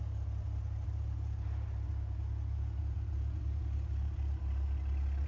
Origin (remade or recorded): recorded